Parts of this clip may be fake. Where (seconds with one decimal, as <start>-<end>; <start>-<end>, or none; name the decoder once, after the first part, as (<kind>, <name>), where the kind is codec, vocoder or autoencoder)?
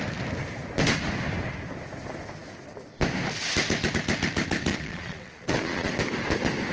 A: 4.7-5.9 (vocoder, Vocos)